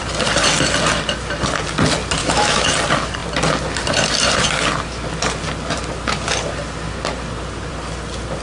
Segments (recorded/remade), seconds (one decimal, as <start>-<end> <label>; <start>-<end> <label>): 0.0-2.2 recorded; 2.2-2.7 remade; 2.7-8.4 recorded